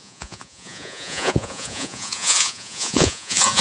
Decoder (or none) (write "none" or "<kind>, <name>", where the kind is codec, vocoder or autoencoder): vocoder, Vocos